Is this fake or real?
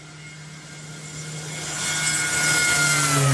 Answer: real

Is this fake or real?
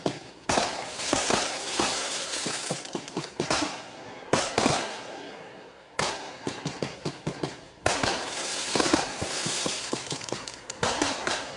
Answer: fake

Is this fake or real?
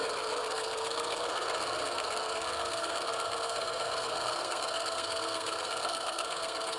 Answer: fake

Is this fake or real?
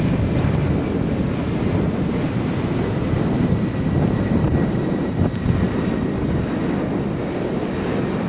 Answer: real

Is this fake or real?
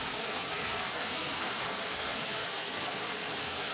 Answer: fake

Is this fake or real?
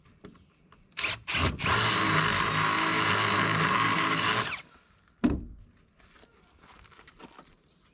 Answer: real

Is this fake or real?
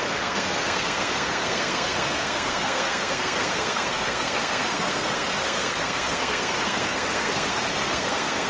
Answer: fake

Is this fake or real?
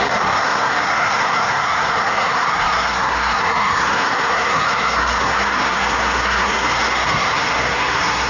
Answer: fake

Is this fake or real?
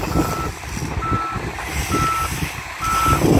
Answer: real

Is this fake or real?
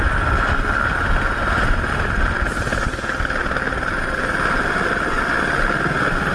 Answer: real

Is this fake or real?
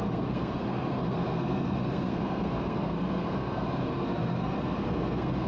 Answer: fake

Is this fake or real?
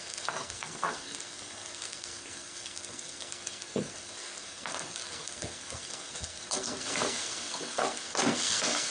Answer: fake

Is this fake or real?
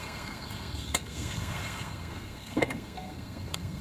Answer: fake